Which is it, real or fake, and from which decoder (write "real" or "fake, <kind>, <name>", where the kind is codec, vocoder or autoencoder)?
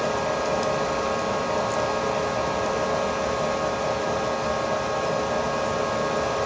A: real